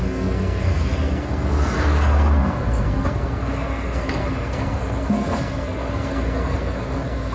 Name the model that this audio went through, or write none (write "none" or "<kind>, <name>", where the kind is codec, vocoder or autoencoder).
codec, SNAC